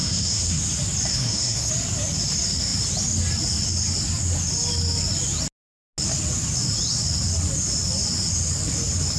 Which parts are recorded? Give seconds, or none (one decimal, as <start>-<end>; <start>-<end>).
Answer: 0.6-1.1; 1.7-9.2